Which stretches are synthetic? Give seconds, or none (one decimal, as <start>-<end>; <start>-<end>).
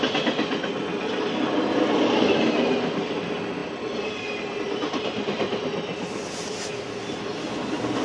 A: none